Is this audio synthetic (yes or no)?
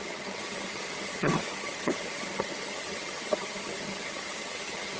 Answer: yes